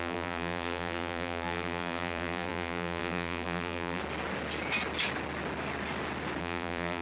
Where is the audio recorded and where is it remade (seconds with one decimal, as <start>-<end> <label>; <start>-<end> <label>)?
0.0-4.0 remade; 4.0-6.4 recorded; 6.4-7.0 remade